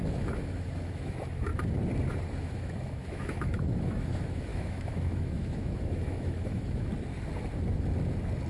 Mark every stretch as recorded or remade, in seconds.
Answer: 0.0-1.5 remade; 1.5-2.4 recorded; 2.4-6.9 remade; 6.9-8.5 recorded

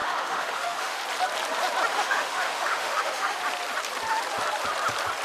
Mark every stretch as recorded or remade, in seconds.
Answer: 0.0-1.0 remade; 1.0-1.9 recorded; 1.9-3.4 remade; 3.4-5.2 recorded

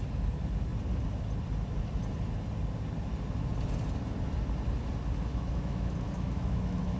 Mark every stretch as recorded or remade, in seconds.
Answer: 0.0-5.3 recorded; 5.3-7.0 remade

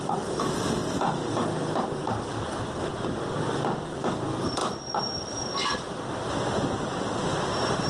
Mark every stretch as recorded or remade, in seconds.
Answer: 0.0-7.9 recorded

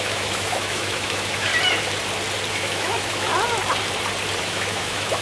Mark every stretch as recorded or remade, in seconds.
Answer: 0.0-1.5 remade; 1.5-2.5 recorded; 2.5-3.3 remade; 3.3-4.4 recorded; 4.4-5.2 remade